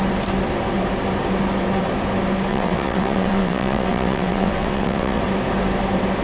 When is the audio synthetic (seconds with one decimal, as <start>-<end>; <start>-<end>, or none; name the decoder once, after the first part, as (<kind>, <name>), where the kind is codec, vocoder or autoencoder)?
2.5-5.2 (vocoder, WaveNeXt)